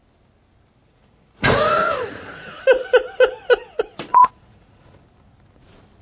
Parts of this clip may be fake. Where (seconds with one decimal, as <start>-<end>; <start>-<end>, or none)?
0.8-2.6; 4.1-5.0